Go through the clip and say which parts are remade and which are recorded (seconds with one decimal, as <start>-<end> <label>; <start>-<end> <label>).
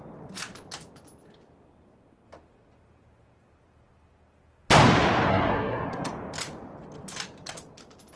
0.0-5.3 recorded; 5.3-6.1 remade; 6.1-8.2 recorded